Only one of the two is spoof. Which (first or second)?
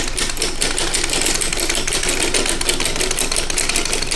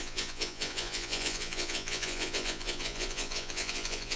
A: second